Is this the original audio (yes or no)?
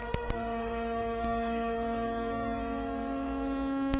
no